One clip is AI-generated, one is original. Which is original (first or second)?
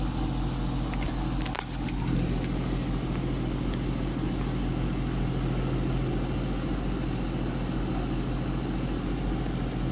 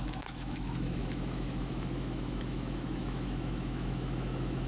first